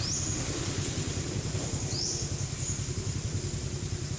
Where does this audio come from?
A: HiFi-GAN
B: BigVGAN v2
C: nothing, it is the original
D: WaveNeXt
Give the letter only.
B